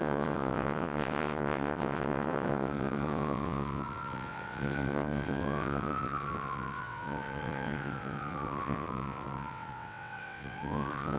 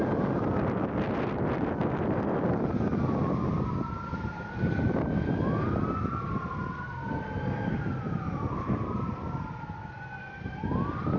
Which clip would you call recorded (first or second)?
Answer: second